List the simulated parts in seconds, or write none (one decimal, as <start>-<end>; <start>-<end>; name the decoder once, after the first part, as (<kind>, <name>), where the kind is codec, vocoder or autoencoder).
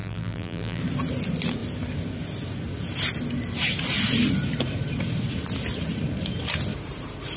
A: 0.0-0.8 (vocoder, BigVGAN v2)